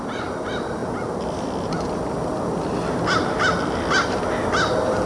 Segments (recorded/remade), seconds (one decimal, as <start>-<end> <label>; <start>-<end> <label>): 0.0-5.1 recorded